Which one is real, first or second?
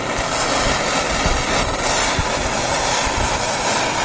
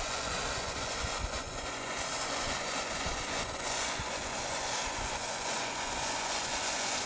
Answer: first